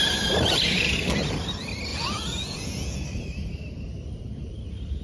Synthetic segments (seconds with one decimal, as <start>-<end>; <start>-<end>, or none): 1.9-3.0